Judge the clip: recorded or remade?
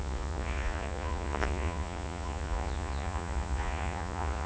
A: remade